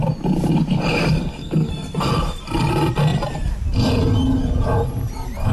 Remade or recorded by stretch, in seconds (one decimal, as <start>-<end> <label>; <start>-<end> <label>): 0.0-1.4 recorded; 1.4-2.0 remade; 2.0-5.5 recorded